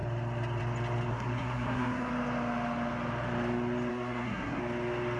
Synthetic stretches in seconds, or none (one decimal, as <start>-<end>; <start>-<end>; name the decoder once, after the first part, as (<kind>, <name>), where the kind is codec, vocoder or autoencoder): 1.1-2.1 (codec, SNAC); 3.9-4.6